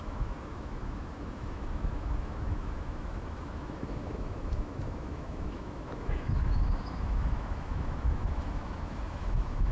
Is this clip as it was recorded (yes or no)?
no